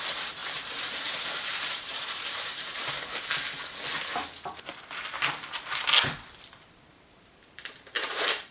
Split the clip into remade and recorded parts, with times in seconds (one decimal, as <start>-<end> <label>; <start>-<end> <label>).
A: 0.0-2.8 remade; 2.8-6.9 recorded; 6.9-8.5 remade